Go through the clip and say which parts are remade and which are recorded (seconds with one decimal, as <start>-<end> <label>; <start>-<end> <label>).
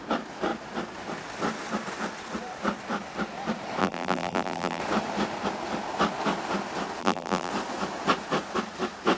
0.0-3.8 recorded; 3.8-4.8 remade; 4.8-7.0 recorded; 7.0-7.5 remade; 7.5-9.2 recorded